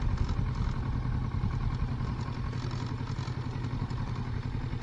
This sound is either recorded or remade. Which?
recorded